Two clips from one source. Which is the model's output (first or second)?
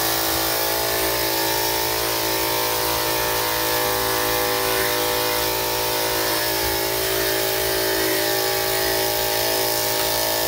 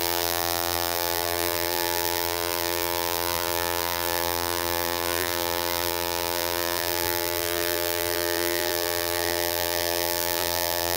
second